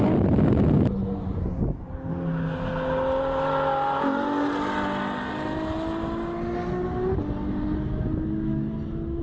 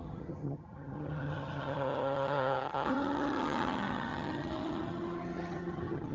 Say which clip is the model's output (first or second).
second